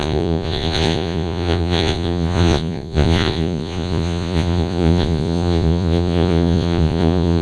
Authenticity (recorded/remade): remade